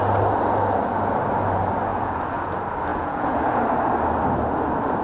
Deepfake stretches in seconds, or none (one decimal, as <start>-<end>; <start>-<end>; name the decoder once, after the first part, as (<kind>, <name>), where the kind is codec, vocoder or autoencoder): 1.9-2.5 (vocoder, Vocos); 2.9-3.6